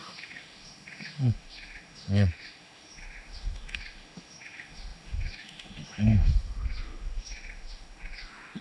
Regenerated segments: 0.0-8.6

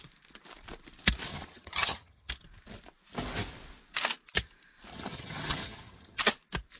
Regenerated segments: 1.3-2.3; 4.9-6.2